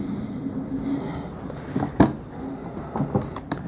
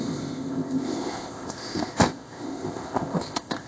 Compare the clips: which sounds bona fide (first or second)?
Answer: first